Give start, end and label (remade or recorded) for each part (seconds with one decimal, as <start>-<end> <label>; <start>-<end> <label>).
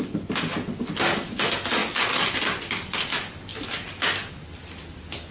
0.0-5.3 recorded